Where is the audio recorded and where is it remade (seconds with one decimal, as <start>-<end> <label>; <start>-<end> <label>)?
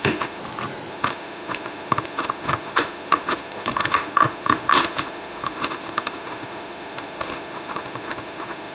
0.0-0.4 remade; 0.4-0.9 recorded; 0.9-8.7 remade